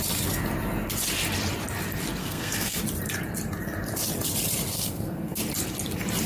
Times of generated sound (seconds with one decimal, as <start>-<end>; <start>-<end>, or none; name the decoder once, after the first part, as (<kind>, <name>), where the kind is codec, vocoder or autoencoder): 2.2-2.8 (codec, SNAC); 4.7-5.4